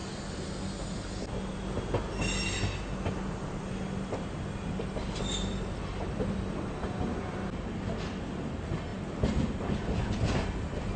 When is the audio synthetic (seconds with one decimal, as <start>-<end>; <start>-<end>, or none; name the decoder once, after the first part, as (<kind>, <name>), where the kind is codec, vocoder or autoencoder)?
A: none